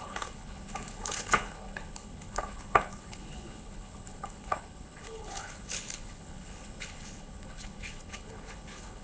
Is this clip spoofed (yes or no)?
yes